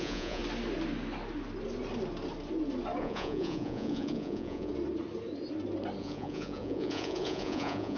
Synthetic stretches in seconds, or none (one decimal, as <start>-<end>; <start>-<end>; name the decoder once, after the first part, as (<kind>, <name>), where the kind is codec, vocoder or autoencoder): 0.0-0.4 (vocoder, Vocos); 3.0-4.7; 6.0-8.0